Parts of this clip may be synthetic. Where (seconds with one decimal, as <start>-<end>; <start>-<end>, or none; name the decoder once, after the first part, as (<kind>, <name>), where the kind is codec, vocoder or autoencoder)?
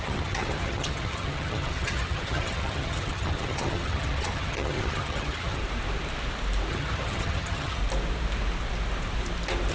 0.0-5.6 (vocoder, HiFi-GAN); 6.7-7.8